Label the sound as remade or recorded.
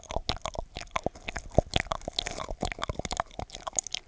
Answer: recorded